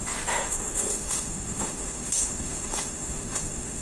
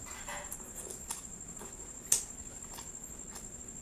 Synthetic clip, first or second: first